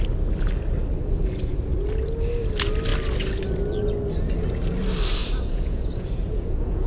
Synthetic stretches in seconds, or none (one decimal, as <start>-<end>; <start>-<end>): 5.2-6.9